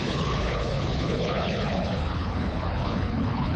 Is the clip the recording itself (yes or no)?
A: no